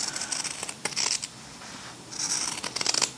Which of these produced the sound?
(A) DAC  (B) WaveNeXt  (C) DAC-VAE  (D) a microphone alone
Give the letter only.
D